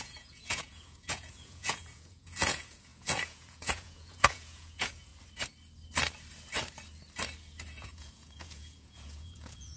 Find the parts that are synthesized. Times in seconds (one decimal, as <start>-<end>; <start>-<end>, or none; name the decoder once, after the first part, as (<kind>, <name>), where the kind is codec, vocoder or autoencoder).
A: 0.0-5.1 (vocoder, Vocos); 7.7-9.8